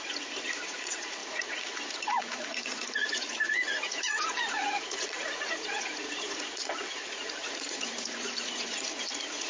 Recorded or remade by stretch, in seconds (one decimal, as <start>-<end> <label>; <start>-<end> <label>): 0.0-9.5 remade